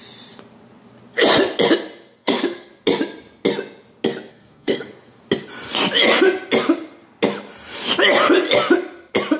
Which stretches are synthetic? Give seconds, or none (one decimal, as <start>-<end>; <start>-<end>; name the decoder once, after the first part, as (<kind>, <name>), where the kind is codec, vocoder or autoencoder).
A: 2.2-2.7 (codec, SNAC); 4.3-5.2